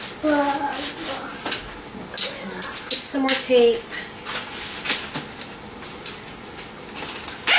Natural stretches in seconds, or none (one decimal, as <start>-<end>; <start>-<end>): 0.0-7.6